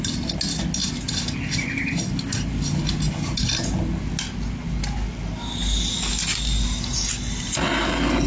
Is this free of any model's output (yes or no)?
yes